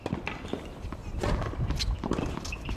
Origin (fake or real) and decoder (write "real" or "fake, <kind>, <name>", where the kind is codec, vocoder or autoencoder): real